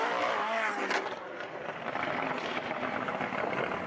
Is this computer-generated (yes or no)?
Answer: no